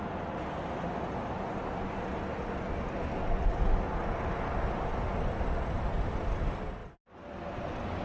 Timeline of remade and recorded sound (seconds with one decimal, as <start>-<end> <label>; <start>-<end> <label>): 0.0-8.0 recorded

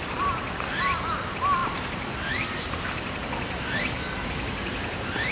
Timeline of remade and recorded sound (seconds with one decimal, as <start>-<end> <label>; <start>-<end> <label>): 0.0-5.3 recorded

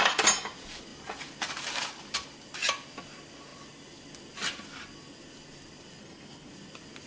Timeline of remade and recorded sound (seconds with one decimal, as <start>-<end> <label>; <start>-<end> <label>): 0.0-6.0 recorded; 6.0-6.5 remade; 6.5-7.1 recorded

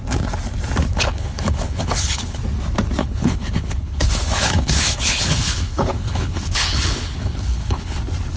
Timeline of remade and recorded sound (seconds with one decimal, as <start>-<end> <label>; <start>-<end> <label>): 0.0-0.9 recorded; 0.9-2.4 remade; 2.4-3.0 recorded; 3.0-8.0 remade; 8.0-8.4 recorded

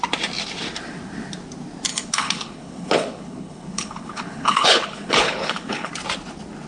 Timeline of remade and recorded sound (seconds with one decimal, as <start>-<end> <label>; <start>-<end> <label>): 0.0-1.9 recorded; 1.9-5.9 remade; 5.9-6.7 recorded

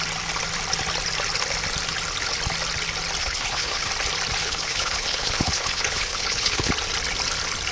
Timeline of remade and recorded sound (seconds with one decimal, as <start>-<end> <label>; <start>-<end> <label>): 0.0-3.2 recorded; 3.2-3.9 remade; 3.9-4.4 recorded; 4.4-6.7 remade; 6.7-7.7 recorded